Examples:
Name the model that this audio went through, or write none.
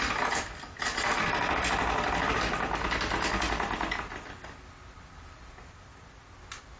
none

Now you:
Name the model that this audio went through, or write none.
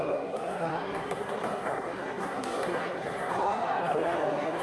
codec, SNAC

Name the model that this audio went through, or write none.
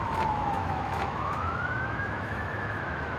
autoencoder, DAC-VAE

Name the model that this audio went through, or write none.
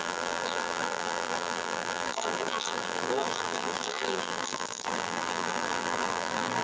vocoder, BigVGAN v2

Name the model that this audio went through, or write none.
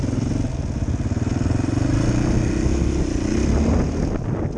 none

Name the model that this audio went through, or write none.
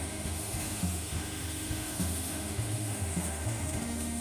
autoencoder, DAC-VAE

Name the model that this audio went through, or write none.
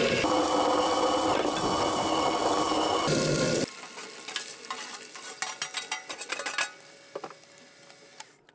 none